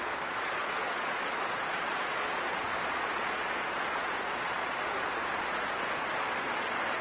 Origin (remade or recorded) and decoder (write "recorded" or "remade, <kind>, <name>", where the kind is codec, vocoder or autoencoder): remade, vocoder, Vocos